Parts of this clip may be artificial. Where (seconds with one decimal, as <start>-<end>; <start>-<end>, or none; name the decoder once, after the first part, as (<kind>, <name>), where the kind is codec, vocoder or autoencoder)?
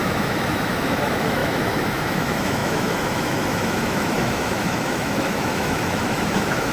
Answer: 0.0-6.7 (autoencoder, DAC-VAE)